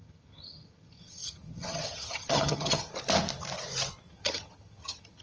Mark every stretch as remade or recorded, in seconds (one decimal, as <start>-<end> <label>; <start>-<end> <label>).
0.0-2.9 remade; 2.9-4.1 recorded; 4.1-5.2 remade